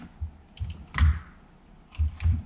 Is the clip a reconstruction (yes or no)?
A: no